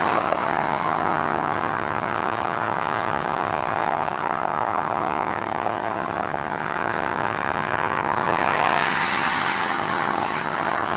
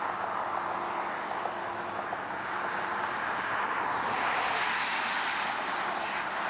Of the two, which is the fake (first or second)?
first